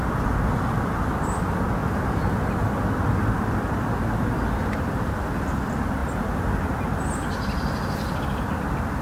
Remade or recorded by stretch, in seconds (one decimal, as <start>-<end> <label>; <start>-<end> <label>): 0.0-9.0 recorded